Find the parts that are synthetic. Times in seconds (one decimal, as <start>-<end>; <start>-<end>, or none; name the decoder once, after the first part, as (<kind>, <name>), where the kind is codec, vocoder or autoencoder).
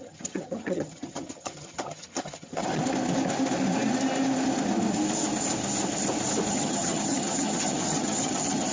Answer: 0.0-2.8 (vocoder, HiFi-GAN); 6.5-8.7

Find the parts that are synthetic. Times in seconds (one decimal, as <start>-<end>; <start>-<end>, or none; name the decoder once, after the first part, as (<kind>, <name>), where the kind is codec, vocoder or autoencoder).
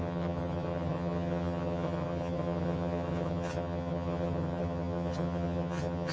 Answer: 0.0-6.1 (vocoder, HiFi-GAN)